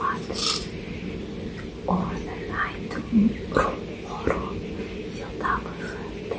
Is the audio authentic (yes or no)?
yes